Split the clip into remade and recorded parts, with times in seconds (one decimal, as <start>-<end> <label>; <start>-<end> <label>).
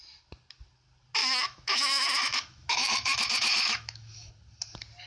0.0-1.2 recorded; 1.2-4.3 remade; 4.3-5.1 recorded